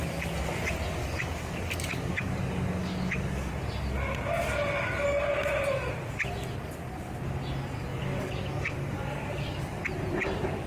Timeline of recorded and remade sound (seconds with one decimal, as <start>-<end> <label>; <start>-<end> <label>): 0.0-1.0 recorded; 1.0-3.5 remade; 3.5-7.9 recorded; 7.9-9.8 remade; 9.8-10.7 recorded